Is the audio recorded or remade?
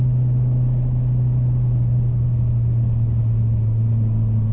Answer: recorded